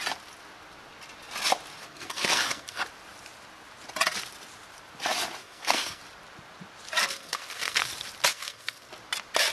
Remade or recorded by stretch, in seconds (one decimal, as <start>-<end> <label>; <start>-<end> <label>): 0.0-1.8 recorded; 1.8-2.8 remade; 2.8-5.4 recorded; 5.4-6.0 remade; 6.0-7.0 recorded; 7.0-7.8 remade; 7.8-8.3 recorded; 8.3-8.9 remade; 8.9-9.5 recorded